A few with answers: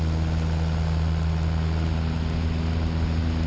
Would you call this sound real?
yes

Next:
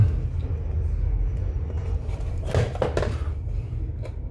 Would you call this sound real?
yes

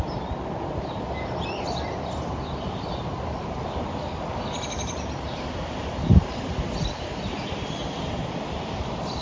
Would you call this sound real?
yes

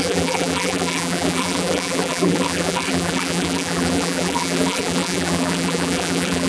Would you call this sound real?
no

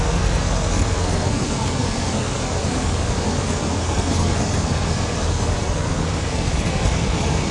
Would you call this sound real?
no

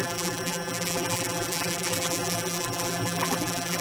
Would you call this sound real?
no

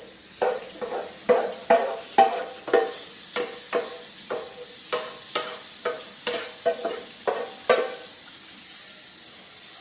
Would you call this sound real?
yes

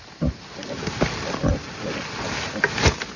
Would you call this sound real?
yes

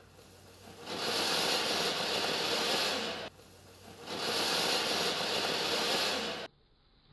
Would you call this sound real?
yes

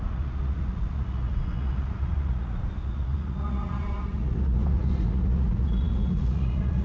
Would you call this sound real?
no